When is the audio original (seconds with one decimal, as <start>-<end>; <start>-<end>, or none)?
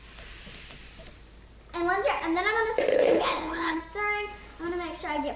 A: 0.0-2.9; 3.8-5.4